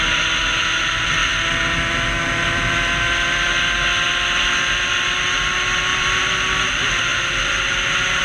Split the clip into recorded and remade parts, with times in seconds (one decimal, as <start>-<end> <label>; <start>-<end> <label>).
0.0-5.9 recorded; 5.9-6.5 remade; 6.5-8.2 recorded